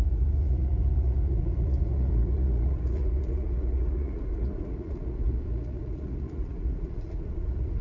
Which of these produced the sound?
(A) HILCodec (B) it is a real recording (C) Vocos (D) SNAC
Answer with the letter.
C